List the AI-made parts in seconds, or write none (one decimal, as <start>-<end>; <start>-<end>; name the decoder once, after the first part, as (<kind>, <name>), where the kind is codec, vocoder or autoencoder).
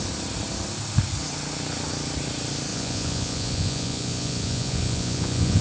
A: 2.7-5.6 (vocoder, Vocos)